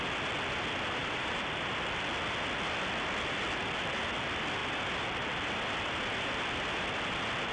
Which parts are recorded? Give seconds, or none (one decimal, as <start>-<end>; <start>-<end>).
0.0-1.0; 1.7-7.5